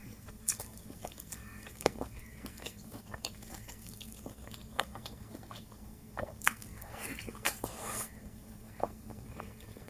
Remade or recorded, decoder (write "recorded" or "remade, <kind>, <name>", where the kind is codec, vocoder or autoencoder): remade, codec, SNAC